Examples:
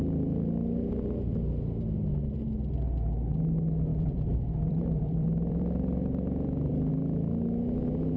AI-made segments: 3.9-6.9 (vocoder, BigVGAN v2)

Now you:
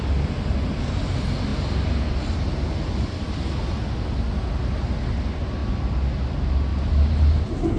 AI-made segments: none

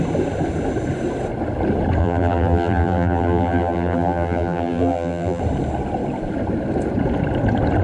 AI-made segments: 2.0-5.4 (vocoder, BigVGAN v2)